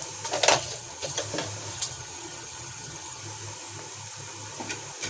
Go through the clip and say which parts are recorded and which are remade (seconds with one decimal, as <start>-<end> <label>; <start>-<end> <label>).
0.0-0.5 recorded; 0.5-1.2 remade; 1.2-1.7 recorded; 1.7-3.2 remade; 3.2-5.1 recorded